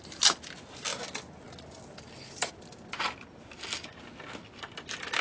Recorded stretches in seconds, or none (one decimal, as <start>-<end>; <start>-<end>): 0.0-5.2